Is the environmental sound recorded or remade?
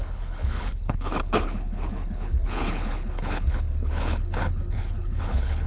remade